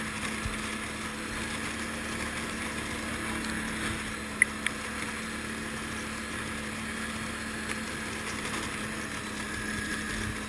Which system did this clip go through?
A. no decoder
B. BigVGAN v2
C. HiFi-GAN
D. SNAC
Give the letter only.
A